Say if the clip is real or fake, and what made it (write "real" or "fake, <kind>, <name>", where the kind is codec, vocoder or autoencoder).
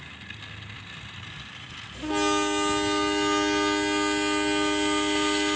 real